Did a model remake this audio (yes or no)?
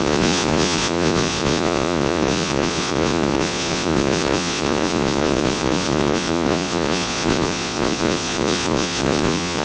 yes